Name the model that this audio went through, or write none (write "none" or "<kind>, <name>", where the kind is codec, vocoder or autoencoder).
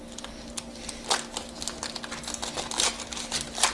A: none